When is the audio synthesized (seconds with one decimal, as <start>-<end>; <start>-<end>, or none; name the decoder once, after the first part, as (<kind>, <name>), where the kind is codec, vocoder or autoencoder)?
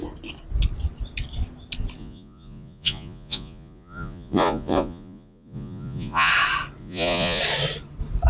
2.0-6.3 (vocoder, Vocos); 6.8-7.4